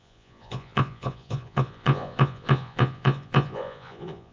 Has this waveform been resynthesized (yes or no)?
yes